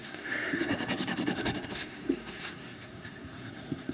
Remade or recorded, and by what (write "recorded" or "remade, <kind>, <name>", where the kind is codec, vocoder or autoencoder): remade, codec, SNAC